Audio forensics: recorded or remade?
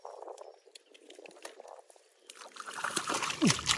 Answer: recorded